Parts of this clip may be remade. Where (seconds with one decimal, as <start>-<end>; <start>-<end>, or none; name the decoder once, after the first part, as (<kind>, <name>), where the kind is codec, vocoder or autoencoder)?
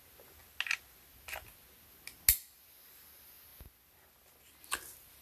none